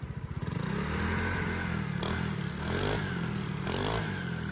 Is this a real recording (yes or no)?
yes